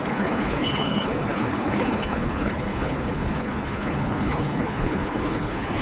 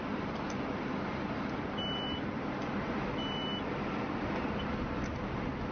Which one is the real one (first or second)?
second